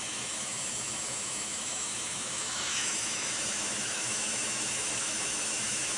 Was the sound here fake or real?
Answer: fake